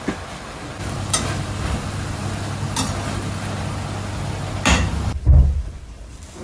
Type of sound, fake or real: real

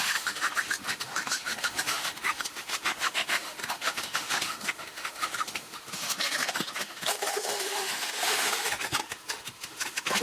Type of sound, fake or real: fake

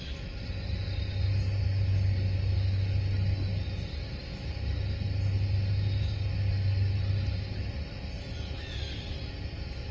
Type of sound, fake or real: real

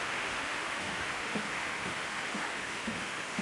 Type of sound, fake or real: fake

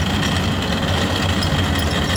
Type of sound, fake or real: real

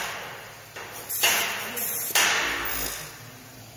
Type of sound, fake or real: real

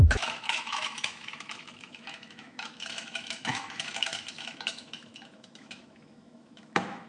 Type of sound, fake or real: fake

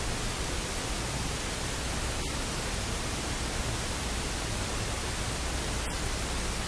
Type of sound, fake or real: real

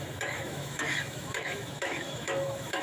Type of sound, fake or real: fake